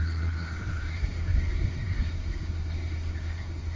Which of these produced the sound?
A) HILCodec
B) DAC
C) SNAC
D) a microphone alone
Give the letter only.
C